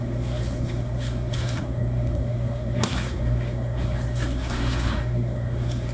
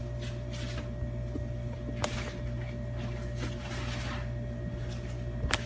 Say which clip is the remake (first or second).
first